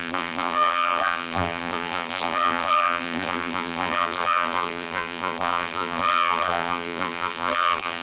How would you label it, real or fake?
fake